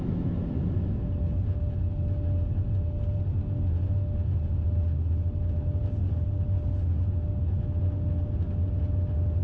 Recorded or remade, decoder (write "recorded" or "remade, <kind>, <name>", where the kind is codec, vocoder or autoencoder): recorded